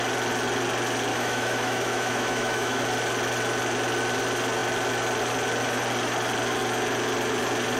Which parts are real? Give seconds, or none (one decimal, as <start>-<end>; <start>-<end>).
0.0-1.1; 2.8-7.8